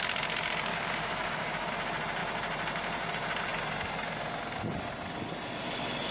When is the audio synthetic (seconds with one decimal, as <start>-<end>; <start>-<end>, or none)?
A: 0.7-1.7